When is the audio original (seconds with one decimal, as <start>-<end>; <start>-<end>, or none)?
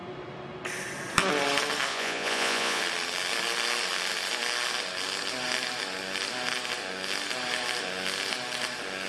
0.0-1.9; 2.8-9.1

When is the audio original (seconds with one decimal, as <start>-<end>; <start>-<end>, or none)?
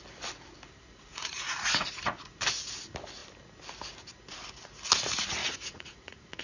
0.0-0.9; 2.3-5.4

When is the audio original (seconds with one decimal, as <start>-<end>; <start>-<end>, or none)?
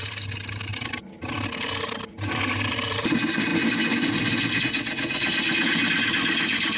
0.0-6.8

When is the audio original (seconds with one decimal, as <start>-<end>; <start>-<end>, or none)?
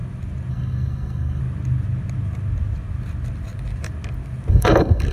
0.0-0.5; 1.4-4.5